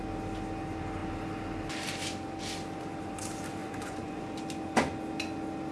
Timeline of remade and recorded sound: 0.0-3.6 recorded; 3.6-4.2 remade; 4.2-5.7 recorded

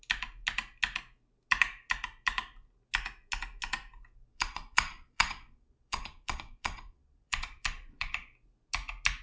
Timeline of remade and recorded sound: 0.0-4.3 recorded; 4.3-8.2 remade; 8.2-9.2 recorded

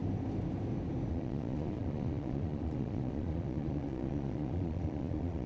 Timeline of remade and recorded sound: 0.0-1.1 recorded; 1.1-5.5 remade